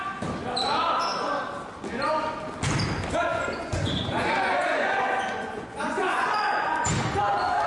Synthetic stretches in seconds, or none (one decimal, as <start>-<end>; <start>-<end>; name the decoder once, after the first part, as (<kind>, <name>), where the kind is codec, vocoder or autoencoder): 3.3-6.9 (vocoder, Vocos)